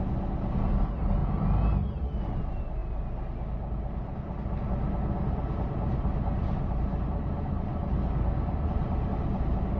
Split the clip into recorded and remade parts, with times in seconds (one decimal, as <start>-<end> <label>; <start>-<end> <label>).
0.0-9.8 recorded